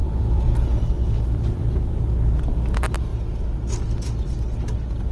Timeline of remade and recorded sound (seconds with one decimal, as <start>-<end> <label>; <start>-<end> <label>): 0.0-2.2 remade; 2.2-3.1 recorded; 3.1-3.7 remade; 3.7-5.1 recorded